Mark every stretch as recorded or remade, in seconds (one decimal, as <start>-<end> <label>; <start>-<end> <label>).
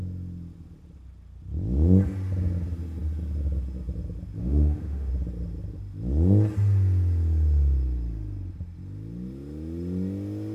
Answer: 0.0-4.4 recorded; 4.4-5.1 remade; 5.1-10.5 recorded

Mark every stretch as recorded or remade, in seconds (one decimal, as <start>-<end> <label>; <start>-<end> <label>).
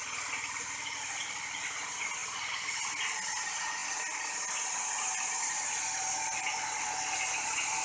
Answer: 0.0-7.8 recorded